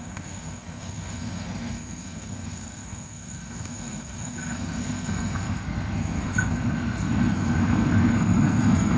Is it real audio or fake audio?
fake